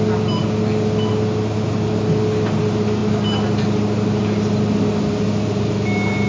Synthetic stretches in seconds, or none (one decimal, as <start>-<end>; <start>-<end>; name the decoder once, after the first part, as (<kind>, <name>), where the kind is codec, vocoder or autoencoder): none